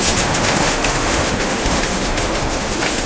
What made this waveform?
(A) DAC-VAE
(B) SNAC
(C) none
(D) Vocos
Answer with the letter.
A